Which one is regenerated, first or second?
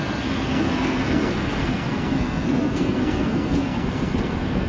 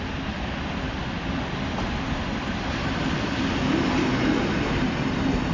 first